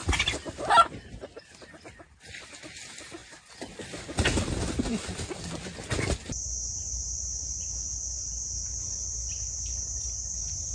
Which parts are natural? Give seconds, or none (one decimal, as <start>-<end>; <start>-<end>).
0.0-10.7